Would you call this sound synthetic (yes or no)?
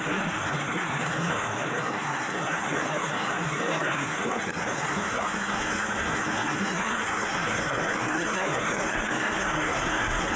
yes